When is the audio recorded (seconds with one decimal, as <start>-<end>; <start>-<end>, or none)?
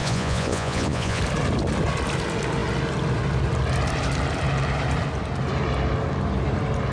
1.2-6.9